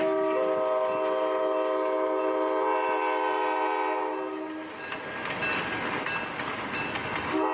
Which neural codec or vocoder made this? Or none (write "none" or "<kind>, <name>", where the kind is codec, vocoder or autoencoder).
none